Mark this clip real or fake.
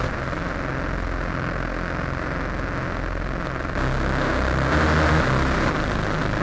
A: real